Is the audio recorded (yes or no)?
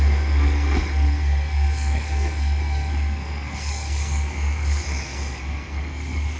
no